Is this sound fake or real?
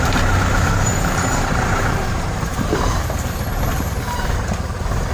fake